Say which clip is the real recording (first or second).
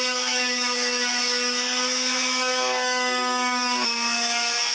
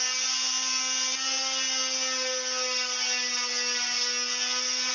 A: second